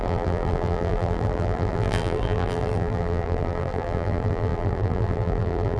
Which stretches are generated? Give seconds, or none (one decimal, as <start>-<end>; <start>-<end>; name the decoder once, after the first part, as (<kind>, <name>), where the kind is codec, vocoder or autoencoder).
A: 0.0-5.8 (vocoder, BigVGAN v2)